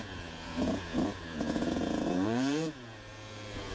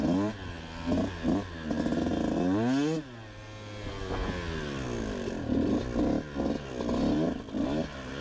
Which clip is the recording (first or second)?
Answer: second